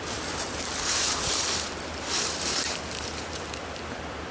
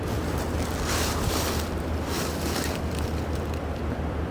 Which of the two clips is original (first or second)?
second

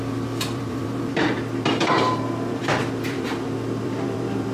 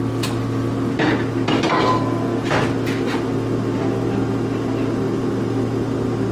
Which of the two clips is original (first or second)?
second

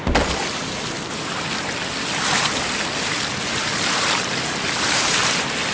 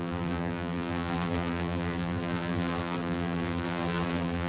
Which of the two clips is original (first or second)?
first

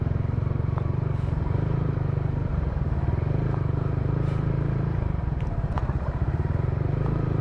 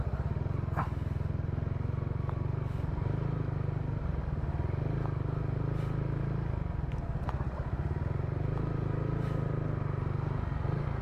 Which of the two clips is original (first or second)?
second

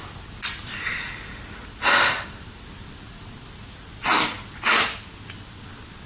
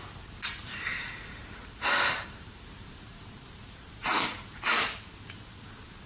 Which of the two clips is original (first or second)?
first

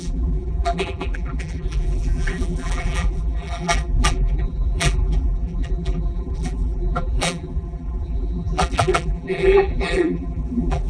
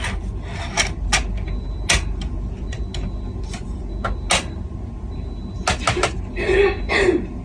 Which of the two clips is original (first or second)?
second